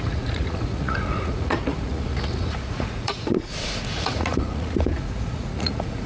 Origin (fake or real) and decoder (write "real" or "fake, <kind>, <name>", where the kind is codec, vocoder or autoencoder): fake, vocoder, Vocos